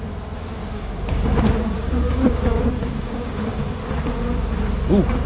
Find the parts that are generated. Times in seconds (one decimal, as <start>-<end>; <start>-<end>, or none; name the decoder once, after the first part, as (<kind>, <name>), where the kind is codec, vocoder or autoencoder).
0.6-3.8 (codec, DAC)